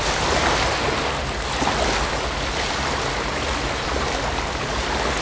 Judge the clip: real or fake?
real